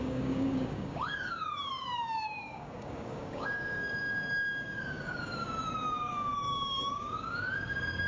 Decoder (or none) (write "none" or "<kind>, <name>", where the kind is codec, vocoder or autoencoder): codec, DAC